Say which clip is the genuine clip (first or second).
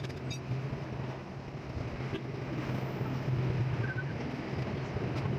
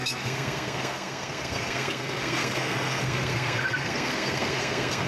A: first